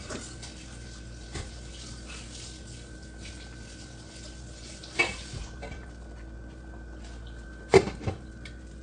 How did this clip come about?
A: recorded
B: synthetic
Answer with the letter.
A